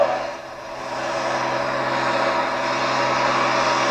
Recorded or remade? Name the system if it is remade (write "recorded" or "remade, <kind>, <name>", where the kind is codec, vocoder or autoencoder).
recorded